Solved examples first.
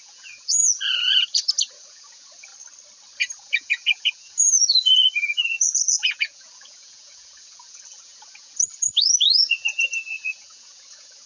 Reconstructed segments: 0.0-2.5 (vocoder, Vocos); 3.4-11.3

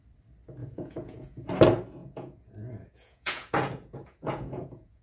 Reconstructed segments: 0.6-1.5 (vocoder, Vocos); 2.0-5.0

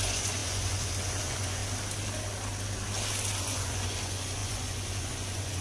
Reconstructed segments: 0.0-1.6 (vocoder, Vocos); 3.4-5.6